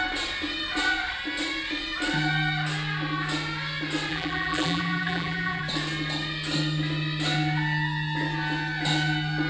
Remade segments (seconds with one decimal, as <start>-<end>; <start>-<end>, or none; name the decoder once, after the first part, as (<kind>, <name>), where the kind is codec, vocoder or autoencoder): 4.1-5.6 (vocoder, BigVGAN v2)